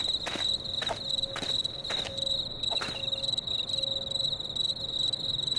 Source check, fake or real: real